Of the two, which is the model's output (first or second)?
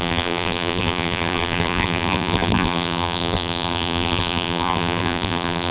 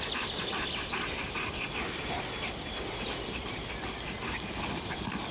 first